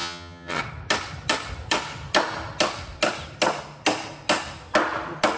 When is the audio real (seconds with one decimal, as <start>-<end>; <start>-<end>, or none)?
0.6-5.4